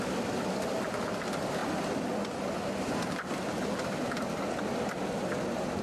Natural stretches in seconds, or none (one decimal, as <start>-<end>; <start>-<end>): 0.0-5.8

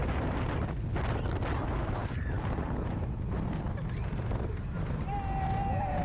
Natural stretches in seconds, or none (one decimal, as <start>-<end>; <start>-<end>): 0.0-6.0

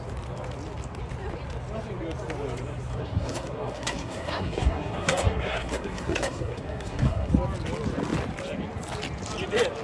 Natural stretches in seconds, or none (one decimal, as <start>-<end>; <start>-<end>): 0.0-2.9; 7.3-9.8

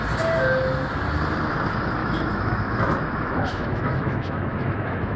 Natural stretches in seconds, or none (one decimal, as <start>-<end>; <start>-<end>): 0.0-2.0